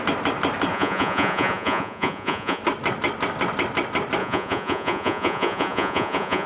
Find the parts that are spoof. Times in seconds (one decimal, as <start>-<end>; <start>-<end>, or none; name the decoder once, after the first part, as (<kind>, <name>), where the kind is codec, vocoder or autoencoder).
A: 0.7-2.6 (vocoder, Vocos); 4.2-6.5